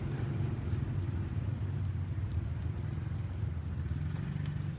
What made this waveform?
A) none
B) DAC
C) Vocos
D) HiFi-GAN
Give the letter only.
A